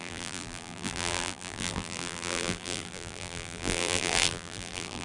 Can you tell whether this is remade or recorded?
remade